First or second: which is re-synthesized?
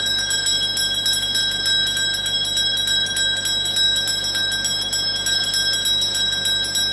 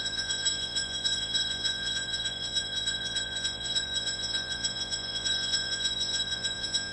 second